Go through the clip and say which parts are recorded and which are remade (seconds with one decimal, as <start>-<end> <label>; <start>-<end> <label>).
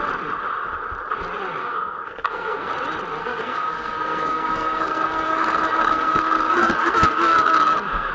0.0-1.6 recorded; 1.6-2.7 remade; 2.7-3.2 recorded; 3.2-8.1 remade